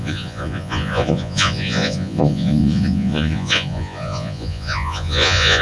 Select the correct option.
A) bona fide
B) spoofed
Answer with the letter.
B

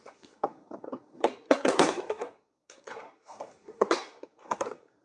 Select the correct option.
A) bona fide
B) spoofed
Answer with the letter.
B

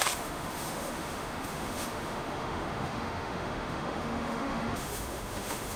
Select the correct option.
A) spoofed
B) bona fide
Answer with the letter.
A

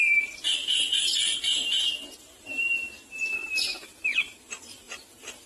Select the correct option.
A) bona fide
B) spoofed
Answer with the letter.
B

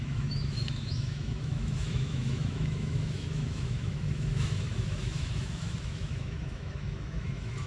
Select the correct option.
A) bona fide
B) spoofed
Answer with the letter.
B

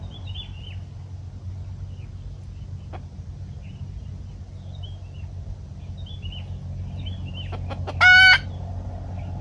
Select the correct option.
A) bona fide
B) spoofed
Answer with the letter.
A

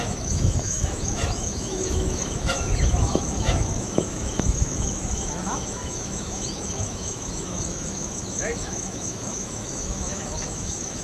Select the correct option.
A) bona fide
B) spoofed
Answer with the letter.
B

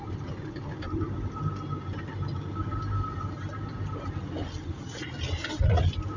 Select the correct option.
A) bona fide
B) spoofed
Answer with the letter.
A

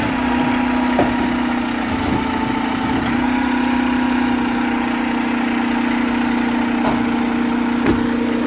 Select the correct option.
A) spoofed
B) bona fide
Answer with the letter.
B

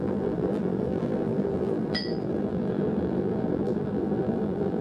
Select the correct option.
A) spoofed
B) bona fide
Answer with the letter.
A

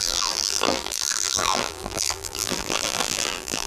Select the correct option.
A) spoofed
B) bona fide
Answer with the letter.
A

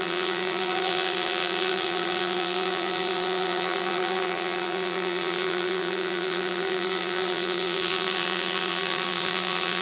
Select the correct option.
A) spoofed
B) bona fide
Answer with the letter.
A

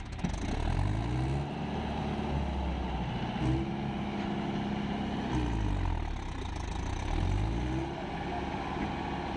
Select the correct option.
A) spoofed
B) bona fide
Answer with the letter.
B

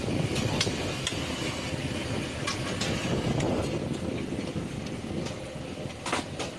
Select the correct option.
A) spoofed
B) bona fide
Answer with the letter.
B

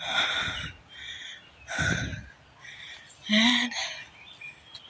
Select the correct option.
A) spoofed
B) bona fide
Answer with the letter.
B